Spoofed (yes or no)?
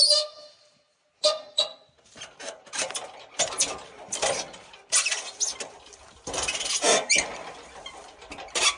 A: no